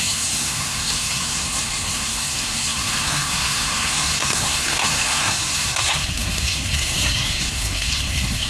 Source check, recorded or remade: remade